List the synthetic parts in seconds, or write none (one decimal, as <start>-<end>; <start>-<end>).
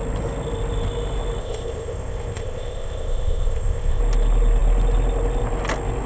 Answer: 1.4-4.0